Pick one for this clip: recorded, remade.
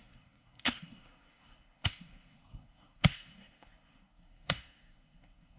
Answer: remade